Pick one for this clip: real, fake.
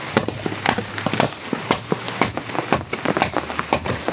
real